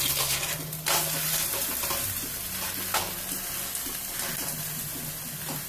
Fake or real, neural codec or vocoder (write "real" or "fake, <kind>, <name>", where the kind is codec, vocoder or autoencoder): real